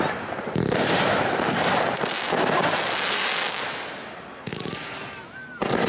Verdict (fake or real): real